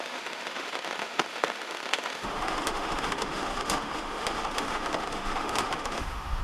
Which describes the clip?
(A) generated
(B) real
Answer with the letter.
A